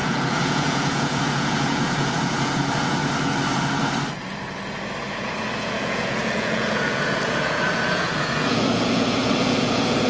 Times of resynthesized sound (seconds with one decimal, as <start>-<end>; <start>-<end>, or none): 0.0-3.0; 5.1-10.1